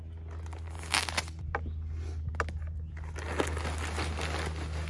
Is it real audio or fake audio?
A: real